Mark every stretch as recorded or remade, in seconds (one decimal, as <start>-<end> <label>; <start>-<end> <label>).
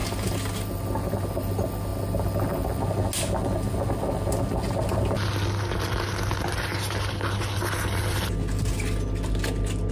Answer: 0.0-9.9 recorded